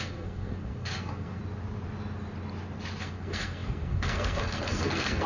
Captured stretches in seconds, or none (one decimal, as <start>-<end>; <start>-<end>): 1.4-3.0